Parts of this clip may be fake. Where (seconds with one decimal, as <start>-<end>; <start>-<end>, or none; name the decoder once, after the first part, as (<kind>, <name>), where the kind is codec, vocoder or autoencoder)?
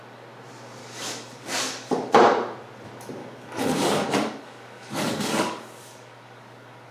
0.8-2.1 (codec, DAC); 3.2-6.9